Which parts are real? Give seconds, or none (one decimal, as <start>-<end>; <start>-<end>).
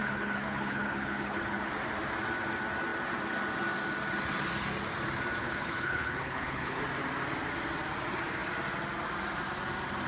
1.7-5.4; 6.8-10.1